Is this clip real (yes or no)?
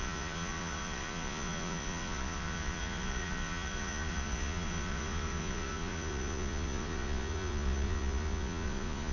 no